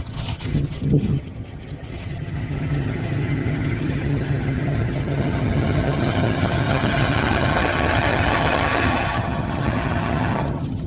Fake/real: fake